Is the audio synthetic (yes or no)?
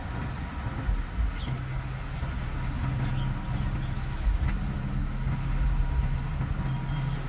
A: no